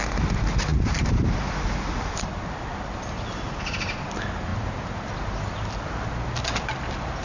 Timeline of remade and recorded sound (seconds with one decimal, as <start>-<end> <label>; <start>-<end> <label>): 0.0-7.2 recorded